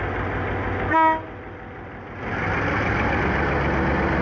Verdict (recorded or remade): recorded